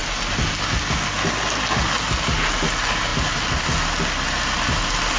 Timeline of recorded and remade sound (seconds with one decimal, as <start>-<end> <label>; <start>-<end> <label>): 0.0-5.2 recorded